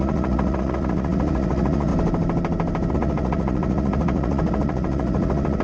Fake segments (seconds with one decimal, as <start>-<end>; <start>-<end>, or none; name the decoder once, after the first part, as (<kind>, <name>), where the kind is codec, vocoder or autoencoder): 0.0-1.9 (vocoder, Vocos); 2.9-5.6